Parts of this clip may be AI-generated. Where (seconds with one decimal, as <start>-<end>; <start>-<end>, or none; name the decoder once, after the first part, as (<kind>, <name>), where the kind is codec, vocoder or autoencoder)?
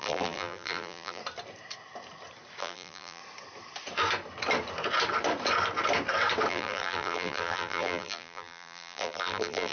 0.0-1.2 (vocoder, BigVGAN v2); 2.6-3.2; 6.5-9.7